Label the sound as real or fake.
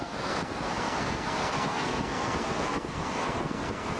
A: fake